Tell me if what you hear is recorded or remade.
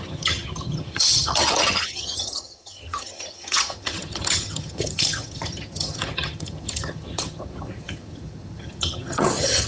remade